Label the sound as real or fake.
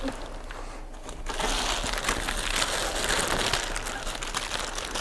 real